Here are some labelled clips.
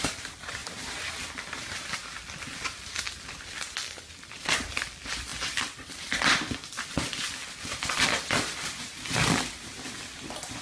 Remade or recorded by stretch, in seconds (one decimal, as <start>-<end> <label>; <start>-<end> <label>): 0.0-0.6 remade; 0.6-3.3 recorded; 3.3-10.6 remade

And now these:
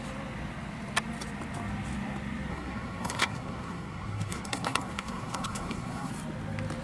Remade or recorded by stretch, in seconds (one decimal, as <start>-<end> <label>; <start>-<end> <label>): 0.0-2.5 recorded; 2.5-6.1 remade; 6.1-6.8 recorded

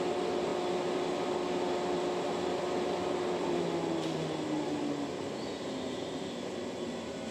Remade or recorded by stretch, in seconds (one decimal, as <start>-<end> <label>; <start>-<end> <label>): 0.0-7.3 recorded